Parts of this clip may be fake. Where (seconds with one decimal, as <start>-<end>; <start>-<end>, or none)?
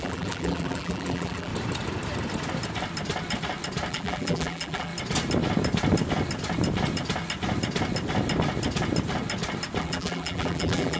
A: 0.0-1.5; 3.9-4.9; 9.8-11.0